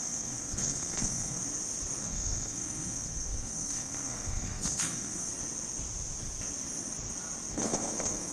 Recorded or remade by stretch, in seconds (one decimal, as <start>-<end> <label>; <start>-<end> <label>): 0.0-1.4 remade; 1.4-2.0 recorded; 2.0-5.3 remade; 5.3-7.5 recorded; 7.5-8.3 remade